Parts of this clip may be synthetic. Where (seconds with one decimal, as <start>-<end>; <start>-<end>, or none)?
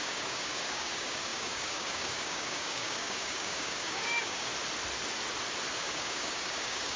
0.0-4.5; 5.7-7.0